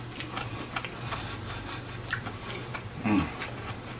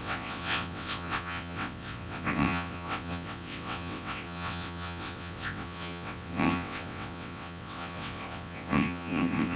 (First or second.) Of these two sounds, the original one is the first